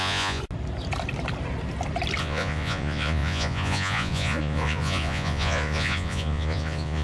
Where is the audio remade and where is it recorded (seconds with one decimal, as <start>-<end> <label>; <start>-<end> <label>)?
0.0-0.4 remade; 0.4-2.2 recorded; 2.2-7.0 remade